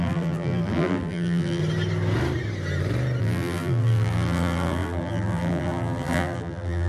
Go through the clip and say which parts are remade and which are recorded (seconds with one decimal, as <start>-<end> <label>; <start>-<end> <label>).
0.0-1.6 remade; 1.6-3.2 recorded; 3.2-6.9 remade